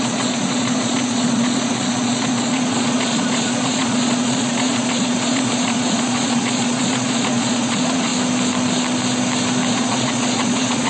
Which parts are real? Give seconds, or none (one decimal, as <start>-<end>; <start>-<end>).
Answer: 8.1-9.7